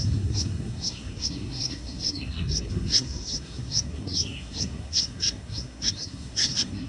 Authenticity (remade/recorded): remade